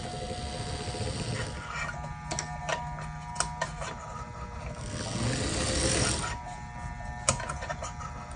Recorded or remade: recorded